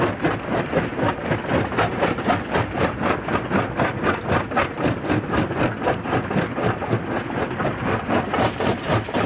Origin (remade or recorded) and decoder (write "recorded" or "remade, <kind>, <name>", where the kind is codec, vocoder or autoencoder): recorded